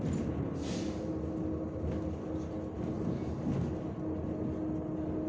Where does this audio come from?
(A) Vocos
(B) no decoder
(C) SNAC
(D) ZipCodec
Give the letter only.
B